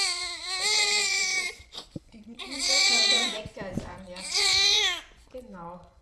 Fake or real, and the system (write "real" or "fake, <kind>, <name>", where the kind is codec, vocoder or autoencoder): fake, vocoder, Vocos